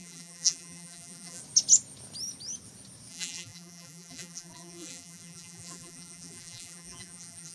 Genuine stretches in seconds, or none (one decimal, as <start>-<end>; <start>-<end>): 1.4-3.1